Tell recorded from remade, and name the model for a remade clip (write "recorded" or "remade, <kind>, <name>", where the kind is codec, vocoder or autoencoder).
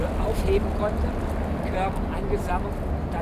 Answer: recorded